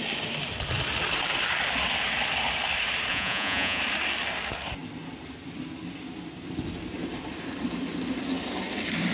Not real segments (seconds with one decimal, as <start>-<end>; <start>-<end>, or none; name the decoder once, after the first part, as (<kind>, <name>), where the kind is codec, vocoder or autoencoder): 3.1-3.8 (vocoder, Vocos)